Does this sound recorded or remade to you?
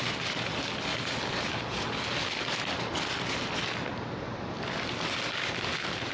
recorded